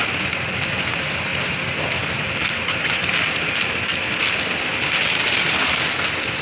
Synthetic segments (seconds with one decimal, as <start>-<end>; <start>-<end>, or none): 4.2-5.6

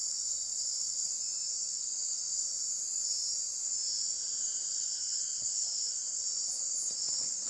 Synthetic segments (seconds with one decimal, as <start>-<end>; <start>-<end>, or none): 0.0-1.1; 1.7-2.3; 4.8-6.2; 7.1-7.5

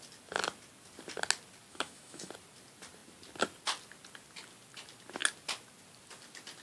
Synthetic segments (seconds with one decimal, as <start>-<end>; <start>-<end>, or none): 1.7-2.3

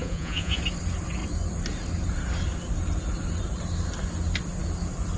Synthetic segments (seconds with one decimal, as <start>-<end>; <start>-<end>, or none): 0.0-0.6